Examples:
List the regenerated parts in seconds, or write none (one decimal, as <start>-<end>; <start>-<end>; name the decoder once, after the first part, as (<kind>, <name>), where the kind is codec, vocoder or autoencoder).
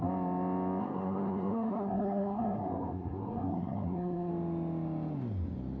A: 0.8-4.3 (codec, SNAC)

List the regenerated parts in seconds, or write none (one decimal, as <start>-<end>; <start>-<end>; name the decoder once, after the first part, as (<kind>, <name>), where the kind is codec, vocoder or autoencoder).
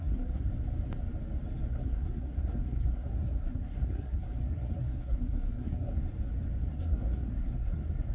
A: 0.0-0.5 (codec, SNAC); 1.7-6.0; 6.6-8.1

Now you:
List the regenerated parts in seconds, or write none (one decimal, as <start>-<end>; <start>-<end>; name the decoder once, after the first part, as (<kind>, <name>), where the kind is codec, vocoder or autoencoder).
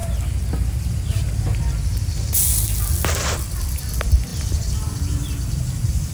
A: none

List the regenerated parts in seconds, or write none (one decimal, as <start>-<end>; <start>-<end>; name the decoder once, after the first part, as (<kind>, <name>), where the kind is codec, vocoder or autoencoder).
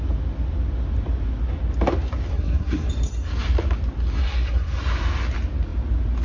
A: 2.3-2.9 (codec, SNAC); 4.2-4.8